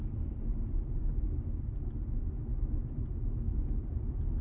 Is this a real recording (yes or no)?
yes